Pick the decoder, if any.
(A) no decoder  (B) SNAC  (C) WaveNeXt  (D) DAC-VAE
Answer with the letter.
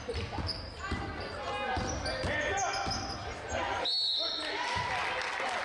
A